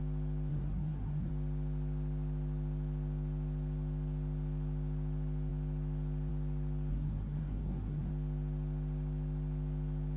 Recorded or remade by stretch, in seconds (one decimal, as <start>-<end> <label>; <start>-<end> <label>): 0.0-0.5 recorded; 0.5-1.3 remade; 1.3-6.9 recorded; 6.9-8.1 remade; 8.1-10.2 recorded